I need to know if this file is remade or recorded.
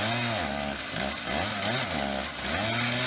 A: recorded